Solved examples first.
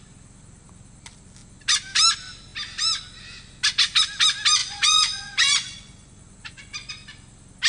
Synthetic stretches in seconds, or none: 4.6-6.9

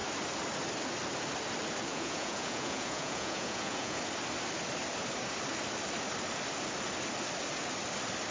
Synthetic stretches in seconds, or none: 1.9-4.0

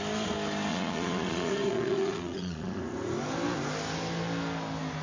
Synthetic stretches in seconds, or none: 0.7-2.8

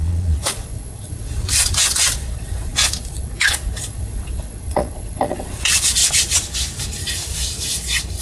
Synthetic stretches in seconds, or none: 0.0-6.0

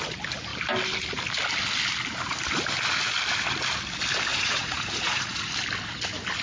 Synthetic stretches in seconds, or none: 4.3-5.5